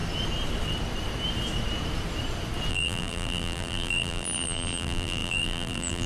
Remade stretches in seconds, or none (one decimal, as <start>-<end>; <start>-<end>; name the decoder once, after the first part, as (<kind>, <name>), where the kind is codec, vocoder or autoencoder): 2.7-6.1 (vocoder, BigVGAN v2)